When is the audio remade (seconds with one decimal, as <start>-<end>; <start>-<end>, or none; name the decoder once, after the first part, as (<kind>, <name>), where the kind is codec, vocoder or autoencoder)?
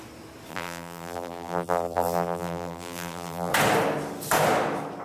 0.5-3.5 (vocoder, BigVGAN v2)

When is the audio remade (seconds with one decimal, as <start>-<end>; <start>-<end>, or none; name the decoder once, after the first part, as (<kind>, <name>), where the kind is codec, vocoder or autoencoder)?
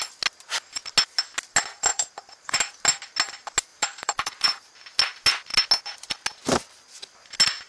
1.9-2.7 (vocoder, BigVGAN v2); 3.7-4.6